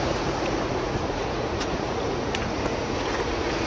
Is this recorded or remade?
remade